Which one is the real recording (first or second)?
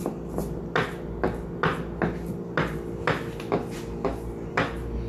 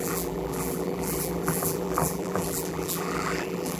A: first